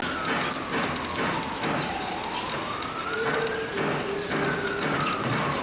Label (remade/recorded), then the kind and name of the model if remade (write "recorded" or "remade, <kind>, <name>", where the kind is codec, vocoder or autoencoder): recorded